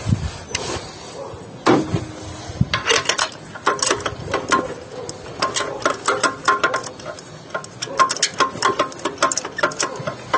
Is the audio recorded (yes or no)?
yes